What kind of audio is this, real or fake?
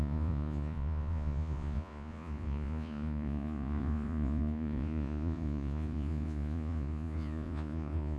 fake